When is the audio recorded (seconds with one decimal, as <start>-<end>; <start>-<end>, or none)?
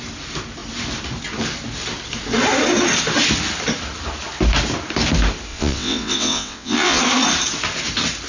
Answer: 0.0-5.5; 7.0-8.3